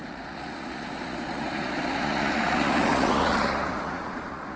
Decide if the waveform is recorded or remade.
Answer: remade